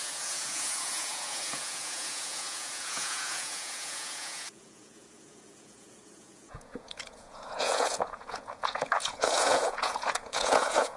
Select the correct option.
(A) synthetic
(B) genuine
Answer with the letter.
A